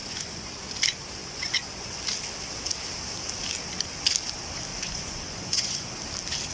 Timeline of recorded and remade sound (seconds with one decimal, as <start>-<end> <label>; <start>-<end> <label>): 0.0-0.5 remade; 0.5-1.2 recorded; 1.2-2.0 remade; 2.0-4.7 recorded; 4.7-5.9 remade; 5.9-6.5 recorded